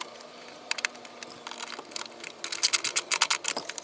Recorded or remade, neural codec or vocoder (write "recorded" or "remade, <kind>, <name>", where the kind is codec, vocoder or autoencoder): recorded